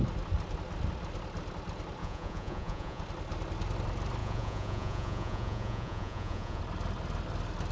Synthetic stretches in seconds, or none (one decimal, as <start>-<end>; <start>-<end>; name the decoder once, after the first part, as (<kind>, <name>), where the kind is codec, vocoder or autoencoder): 2.0-3.0 (vocoder, Vocos); 4.2-6.6